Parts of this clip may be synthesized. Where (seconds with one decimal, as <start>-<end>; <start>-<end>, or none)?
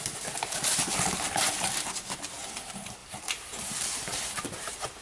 3.0-5.0